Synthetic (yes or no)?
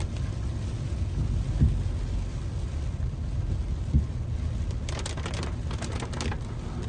no